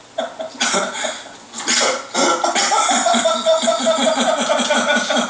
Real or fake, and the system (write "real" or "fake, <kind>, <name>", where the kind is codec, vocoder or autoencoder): real